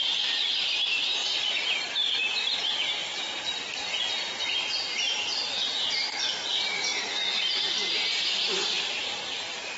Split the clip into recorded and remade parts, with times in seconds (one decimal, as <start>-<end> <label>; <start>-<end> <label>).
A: 0.0-9.8 remade